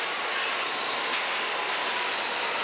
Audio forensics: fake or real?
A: real